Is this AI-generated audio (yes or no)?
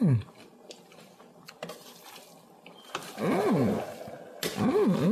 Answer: no